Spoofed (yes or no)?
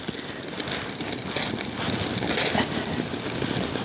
no